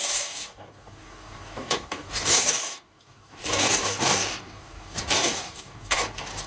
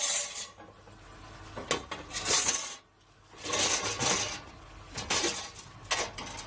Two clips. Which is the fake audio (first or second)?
first